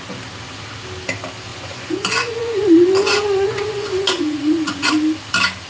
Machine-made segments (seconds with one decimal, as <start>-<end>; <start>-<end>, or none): 1.5-4.9